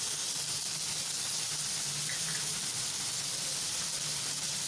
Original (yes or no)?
yes